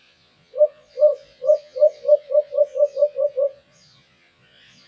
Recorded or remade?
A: remade